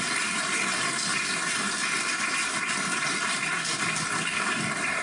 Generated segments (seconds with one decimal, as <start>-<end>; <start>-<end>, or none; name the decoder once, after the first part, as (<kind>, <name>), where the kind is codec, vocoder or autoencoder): none